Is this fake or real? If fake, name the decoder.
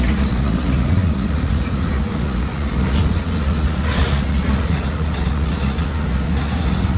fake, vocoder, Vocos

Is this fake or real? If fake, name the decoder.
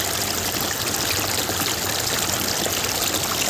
real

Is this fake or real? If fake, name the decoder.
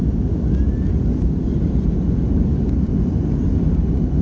real